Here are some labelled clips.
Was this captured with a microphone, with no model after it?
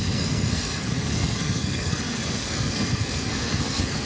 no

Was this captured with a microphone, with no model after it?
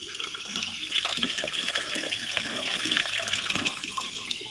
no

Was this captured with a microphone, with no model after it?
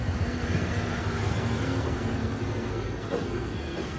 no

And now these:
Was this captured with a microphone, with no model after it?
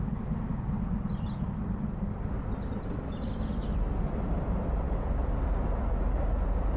yes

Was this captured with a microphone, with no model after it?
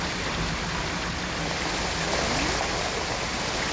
yes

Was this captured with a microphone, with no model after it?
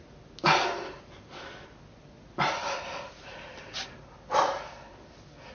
yes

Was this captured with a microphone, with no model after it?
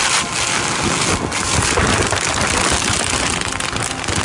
yes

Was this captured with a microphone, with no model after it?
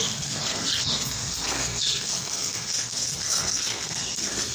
no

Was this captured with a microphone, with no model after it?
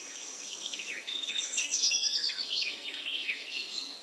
no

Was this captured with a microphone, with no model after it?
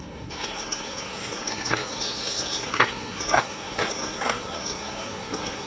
no